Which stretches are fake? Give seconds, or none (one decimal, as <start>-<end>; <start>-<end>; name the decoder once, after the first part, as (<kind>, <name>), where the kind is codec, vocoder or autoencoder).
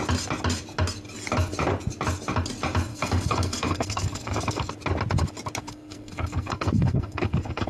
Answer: 2.9-4.7 (codec, SNAC); 5.6-7.7